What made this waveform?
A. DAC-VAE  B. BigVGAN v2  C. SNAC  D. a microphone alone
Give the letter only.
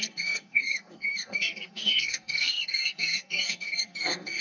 C